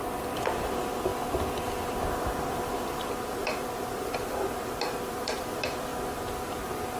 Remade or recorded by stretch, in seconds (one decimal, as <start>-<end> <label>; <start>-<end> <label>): 0.0-1.1 remade; 1.1-2.1 recorded; 2.1-5.9 remade; 5.9-7.0 recorded